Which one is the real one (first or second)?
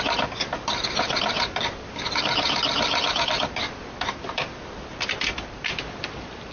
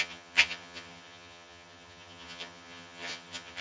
first